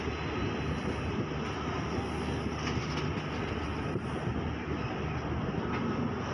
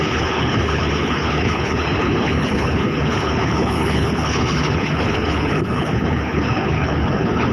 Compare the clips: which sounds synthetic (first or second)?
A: second